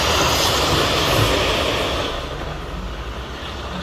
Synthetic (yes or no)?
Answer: no